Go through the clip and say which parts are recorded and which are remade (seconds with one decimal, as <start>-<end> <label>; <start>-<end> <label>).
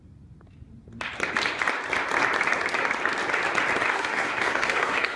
0.0-3.9 recorded; 3.9-5.2 remade